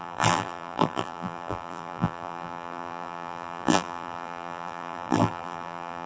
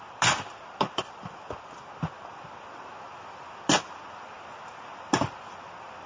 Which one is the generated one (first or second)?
first